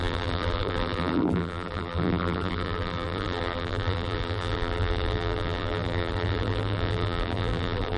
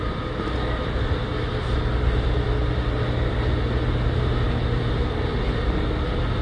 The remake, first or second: first